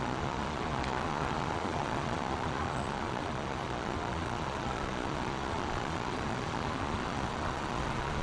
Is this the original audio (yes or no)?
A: no